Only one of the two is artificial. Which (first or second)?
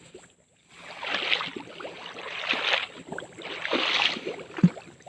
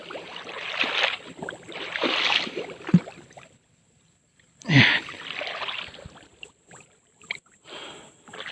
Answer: second